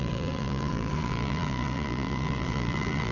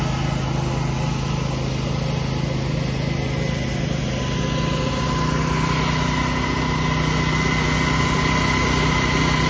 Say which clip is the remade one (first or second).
first